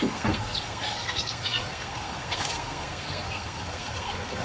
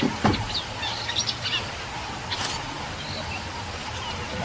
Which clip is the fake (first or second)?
first